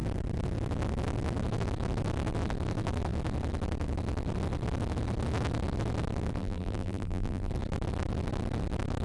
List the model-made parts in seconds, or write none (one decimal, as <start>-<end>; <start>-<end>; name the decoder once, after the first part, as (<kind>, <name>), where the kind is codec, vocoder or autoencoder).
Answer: 6.4-7.5 (vocoder, BigVGAN v2)